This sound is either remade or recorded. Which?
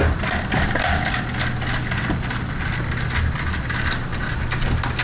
recorded